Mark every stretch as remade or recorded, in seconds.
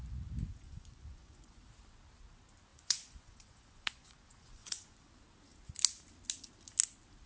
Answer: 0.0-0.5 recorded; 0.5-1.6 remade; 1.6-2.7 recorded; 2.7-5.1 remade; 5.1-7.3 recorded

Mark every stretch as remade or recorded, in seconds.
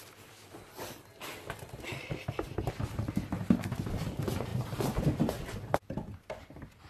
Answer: 0.0-4.5 recorded; 4.5-5.0 remade; 5.0-6.9 recorded